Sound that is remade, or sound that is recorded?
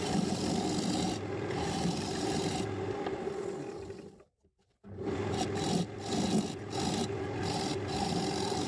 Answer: remade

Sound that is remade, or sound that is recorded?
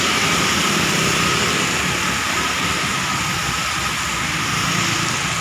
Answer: recorded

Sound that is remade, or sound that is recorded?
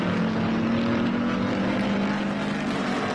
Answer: recorded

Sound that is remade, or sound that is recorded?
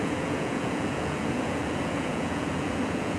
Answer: remade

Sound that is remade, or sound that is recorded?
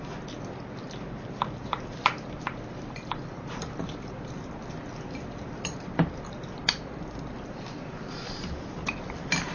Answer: remade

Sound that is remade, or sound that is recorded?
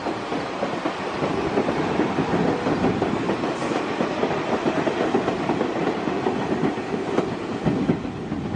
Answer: recorded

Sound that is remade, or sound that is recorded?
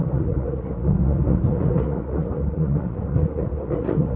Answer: remade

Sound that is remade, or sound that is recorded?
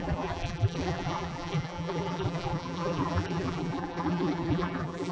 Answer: remade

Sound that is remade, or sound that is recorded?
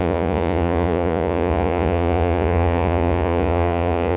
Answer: remade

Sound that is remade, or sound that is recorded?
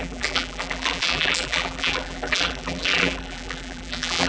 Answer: remade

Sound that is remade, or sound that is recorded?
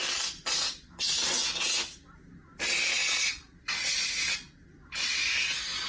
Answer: recorded